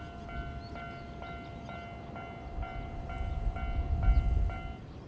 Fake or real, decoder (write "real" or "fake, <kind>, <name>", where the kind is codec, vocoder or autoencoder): real